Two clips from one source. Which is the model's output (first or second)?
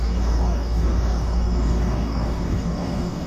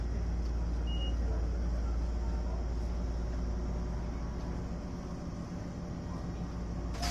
first